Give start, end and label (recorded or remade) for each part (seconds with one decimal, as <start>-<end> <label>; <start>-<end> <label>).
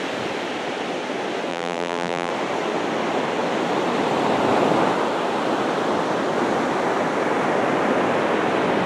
0.0-1.5 recorded; 1.5-2.3 remade; 2.3-8.9 recorded